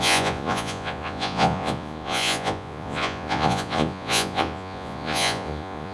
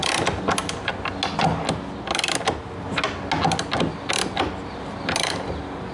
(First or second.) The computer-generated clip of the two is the first